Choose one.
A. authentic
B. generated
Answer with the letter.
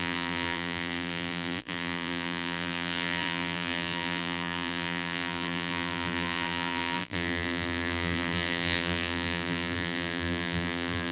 B